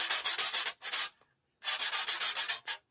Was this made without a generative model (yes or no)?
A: yes